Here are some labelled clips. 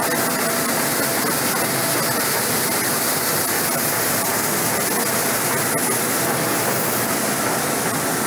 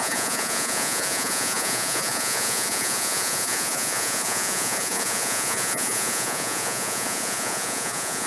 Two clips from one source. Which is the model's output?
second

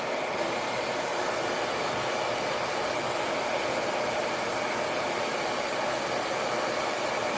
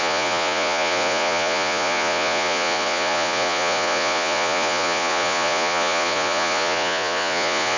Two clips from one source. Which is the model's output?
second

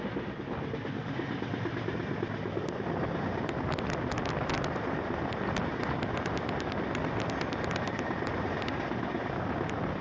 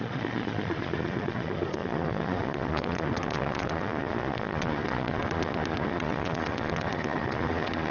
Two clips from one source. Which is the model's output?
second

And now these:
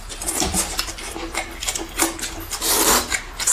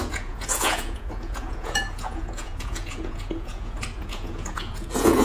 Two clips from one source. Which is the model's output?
second